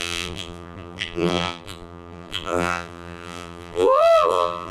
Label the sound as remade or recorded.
remade